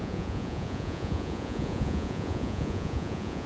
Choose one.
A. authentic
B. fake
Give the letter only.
B